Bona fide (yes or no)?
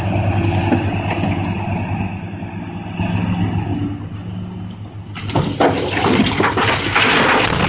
yes